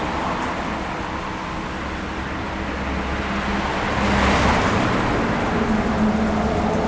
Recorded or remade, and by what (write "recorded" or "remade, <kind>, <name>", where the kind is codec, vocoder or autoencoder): recorded